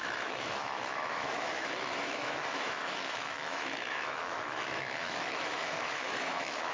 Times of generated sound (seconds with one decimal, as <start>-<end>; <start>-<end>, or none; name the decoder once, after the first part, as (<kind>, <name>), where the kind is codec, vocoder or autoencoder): 0.0-6.7 (autoencoder, DAC-VAE)